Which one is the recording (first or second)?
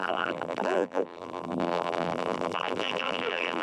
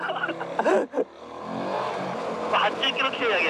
second